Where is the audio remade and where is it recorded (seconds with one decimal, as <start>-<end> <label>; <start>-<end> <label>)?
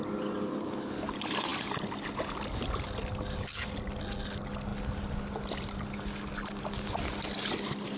0.0-8.0 recorded